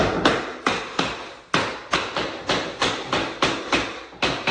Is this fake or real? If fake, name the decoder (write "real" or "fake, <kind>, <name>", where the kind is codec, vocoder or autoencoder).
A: real